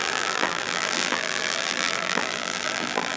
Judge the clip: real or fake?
fake